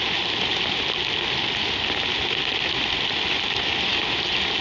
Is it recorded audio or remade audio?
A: recorded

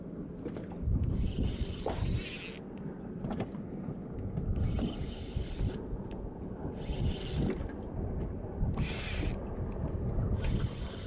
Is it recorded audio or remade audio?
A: recorded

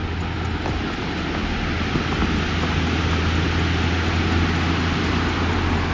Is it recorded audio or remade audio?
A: recorded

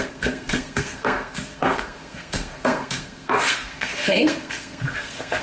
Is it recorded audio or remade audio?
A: remade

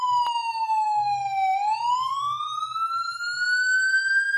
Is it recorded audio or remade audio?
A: recorded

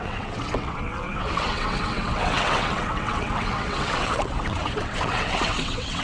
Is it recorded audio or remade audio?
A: remade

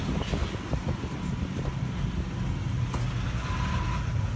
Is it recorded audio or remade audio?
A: recorded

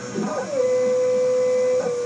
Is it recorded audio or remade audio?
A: recorded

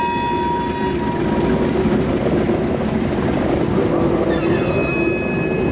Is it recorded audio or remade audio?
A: recorded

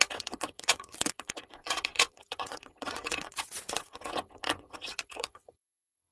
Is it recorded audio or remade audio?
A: remade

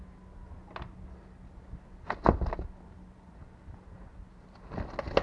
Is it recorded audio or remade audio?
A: recorded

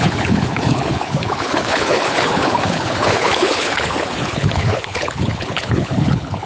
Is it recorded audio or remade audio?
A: remade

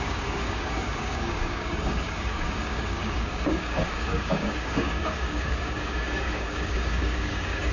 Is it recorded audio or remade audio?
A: remade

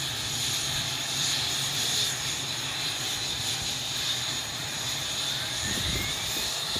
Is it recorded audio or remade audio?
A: remade